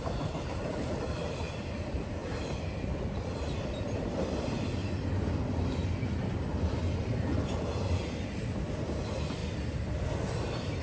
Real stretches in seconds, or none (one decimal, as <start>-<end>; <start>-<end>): 2.2-3.0; 4.8-6.5; 9.4-10.8